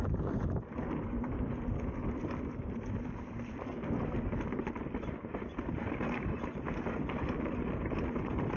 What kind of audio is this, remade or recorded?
recorded